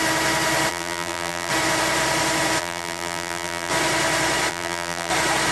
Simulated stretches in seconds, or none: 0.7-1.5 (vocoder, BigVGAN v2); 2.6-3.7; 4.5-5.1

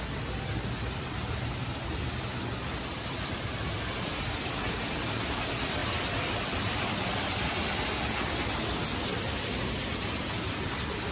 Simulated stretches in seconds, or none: none

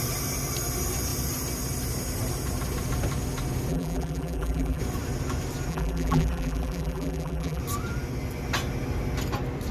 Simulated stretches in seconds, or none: 3.7-4.8 (vocoder, BigVGAN v2); 5.7-7.6

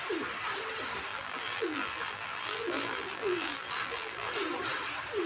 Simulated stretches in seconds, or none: 1.1-4.3 (vocoder, BigVGAN v2)

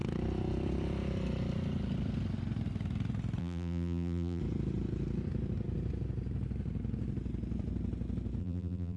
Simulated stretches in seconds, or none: 3.4-4.4 (vocoder, BigVGAN v2); 8.4-9.0

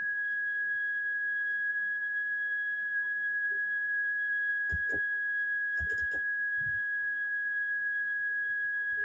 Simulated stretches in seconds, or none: 1.7-4.5 (vocoder, BigVGAN v2)